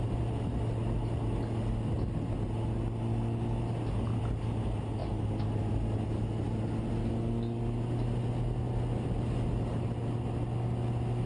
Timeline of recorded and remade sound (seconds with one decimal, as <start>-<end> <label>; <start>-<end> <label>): 0.0-11.3 recorded

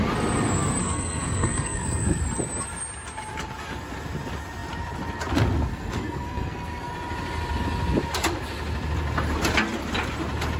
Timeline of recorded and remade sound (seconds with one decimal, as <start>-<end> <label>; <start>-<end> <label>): 0.0-0.8 recorded; 0.8-2.2 remade; 2.2-5.7 recorded; 5.7-6.9 remade; 6.9-10.6 recorded

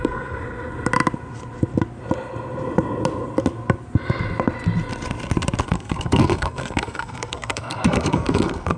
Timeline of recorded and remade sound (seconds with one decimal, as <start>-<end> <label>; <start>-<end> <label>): 0.0-0.4 remade; 0.4-5.6 recorded; 5.6-8.8 remade

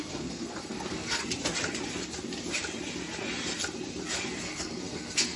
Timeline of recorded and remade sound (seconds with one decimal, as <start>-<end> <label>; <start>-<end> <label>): 0.0-1.2 remade; 1.2-4.4 recorded; 4.4-5.4 remade